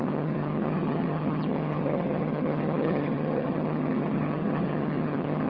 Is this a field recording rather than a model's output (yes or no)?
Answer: no